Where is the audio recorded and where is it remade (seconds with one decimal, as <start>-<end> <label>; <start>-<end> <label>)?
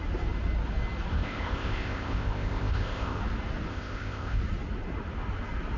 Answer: 0.0-1.1 recorded; 1.1-3.2 remade; 3.2-3.7 recorded; 3.7-4.4 remade; 4.4-5.8 recorded